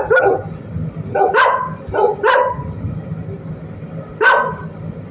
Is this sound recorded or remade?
recorded